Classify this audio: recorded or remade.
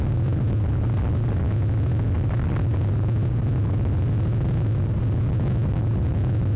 recorded